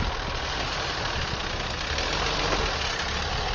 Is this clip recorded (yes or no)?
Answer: yes